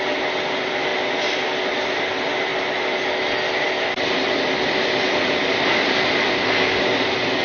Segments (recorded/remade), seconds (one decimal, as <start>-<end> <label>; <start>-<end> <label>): 0.0-6.3 recorded; 6.3-6.8 remade; 6.8-7.4 recorded